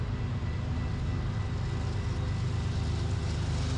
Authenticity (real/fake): real